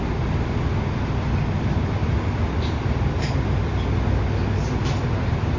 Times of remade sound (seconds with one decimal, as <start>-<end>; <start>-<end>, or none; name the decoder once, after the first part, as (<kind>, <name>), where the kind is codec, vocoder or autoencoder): none